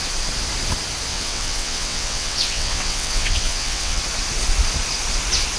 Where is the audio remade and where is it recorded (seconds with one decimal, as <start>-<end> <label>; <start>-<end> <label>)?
0.0-1.1 recorded; 1.1-4.0 remade; 4.0-5.6 recorded